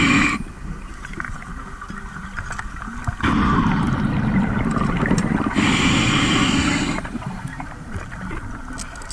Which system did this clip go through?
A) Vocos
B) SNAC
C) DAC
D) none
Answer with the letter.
D